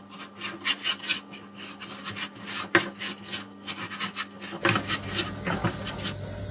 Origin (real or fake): real